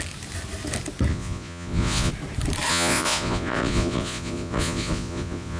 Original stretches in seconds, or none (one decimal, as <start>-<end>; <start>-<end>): 0.0-1.1; 2.1-2.7